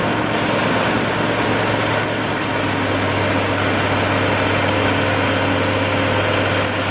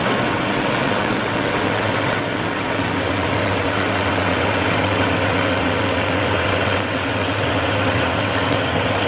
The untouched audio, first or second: first